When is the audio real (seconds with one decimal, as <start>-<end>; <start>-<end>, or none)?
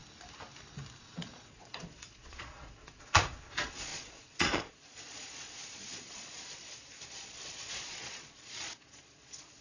0.0-1.0